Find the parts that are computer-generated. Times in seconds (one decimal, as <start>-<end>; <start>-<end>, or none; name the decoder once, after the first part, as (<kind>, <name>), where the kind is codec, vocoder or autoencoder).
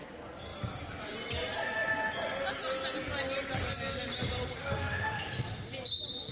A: 4.6-5.2 (autoencoder, DAC-VAE)